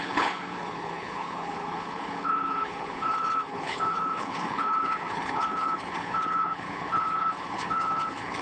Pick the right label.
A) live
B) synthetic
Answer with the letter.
B